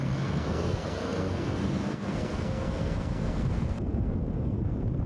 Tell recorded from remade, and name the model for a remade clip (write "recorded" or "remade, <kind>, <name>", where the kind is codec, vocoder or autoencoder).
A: remade, codec, SNAC